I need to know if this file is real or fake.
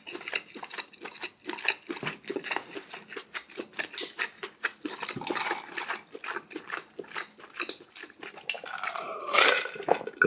real